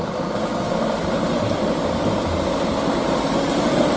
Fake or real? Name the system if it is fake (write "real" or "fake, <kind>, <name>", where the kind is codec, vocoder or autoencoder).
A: real